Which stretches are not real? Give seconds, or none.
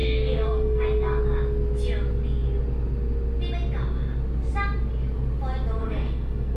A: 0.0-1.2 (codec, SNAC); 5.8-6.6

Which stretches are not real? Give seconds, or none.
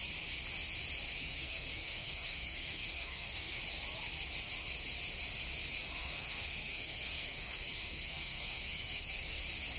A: 1.2-3.6 (codec, SNAC); 5.8-9.4